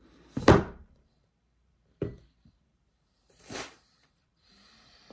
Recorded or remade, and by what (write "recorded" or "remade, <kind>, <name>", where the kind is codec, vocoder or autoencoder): remade, vocoder, BigVGAN v2